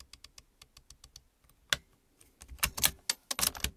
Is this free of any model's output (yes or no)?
yes